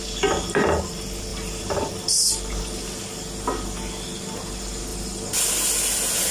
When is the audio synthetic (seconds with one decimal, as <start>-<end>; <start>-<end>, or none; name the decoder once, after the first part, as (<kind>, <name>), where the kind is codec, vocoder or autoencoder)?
1.3-3.0 (vocoder, BigVGAN v2); 4.9-5.5